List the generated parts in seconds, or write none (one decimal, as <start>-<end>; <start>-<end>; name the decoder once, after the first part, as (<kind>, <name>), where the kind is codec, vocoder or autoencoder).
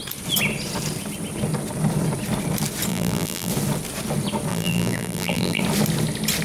2.9-3.5 (vocoder, BigVGAN v2); 4.5-5.6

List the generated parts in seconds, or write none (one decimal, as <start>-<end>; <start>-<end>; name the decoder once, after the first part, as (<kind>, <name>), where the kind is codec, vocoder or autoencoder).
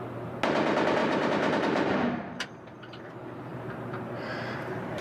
1.0-3.0 (vocoder, BigVGAN v2); 3.5-5.0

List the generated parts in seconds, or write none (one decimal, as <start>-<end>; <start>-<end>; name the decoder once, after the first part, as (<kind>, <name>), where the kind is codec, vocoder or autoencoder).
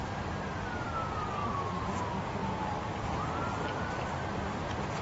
1.4-2.0 (vocoder, BigVGAN v2)